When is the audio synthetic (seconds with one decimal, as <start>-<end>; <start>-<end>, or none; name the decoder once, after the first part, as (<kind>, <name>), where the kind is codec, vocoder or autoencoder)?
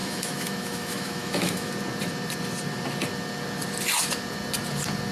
0.0-1.7 (autoencoder, DAC-VAE)